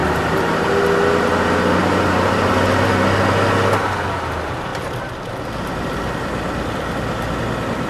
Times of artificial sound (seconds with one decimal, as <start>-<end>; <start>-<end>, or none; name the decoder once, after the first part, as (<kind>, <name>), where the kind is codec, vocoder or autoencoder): 0.0-0.7 (vocoder, BigVGAN v2); 1.8-2.5; 4.7-5.3